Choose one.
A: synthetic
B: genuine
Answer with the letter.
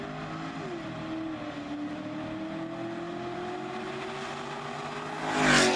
B